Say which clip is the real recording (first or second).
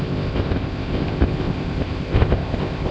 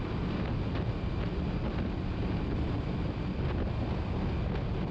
second